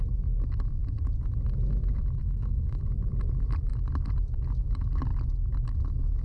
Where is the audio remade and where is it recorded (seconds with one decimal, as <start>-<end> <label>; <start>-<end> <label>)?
0.0-2.2 recorded; 2.2-2.8 remade; 2.8-6.2 recorded